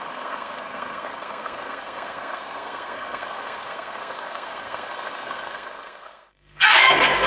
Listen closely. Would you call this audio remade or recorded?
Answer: remade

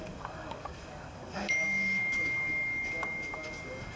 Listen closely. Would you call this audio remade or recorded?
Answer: remade